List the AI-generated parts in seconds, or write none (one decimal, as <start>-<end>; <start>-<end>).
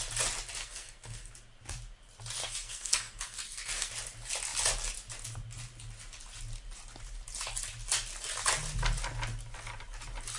0.6-1.3; 2.4-3.9